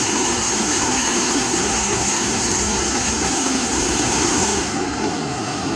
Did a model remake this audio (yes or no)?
yes